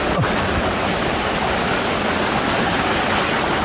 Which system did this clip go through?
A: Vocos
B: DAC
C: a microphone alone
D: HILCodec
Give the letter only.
C